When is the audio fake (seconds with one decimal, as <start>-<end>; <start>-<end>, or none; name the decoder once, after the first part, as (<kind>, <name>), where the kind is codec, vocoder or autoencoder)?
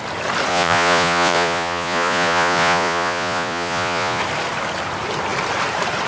0.5-4.2 (vocoder, Vocos)